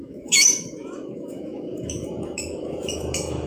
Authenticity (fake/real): fake